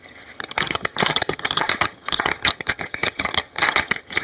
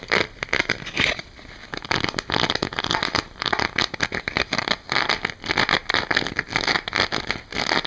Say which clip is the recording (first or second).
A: second